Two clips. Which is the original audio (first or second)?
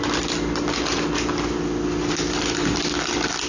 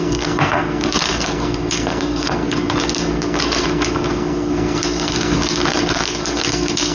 first